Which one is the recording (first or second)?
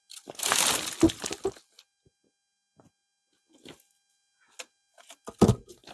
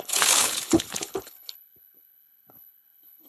first